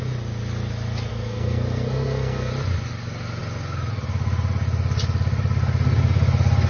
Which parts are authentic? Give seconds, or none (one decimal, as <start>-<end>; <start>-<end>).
0.0-1.1; 2.5-6.7